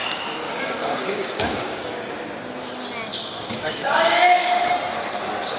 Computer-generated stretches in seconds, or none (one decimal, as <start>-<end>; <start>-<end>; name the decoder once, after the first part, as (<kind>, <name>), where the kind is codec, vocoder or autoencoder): 0.0-2.1 (codec, DAC); 3.1-4.7